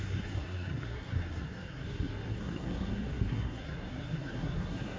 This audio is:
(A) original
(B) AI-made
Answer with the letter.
B